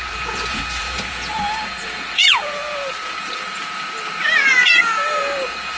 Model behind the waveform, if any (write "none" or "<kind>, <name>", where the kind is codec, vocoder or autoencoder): vocoder, Vocos